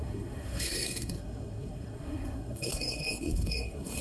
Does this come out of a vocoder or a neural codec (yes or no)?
yes